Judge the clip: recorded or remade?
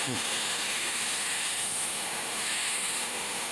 remade